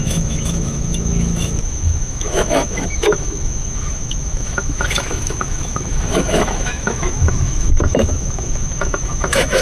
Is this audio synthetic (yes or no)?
yes